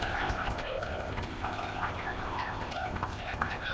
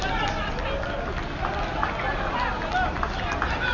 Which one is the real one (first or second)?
second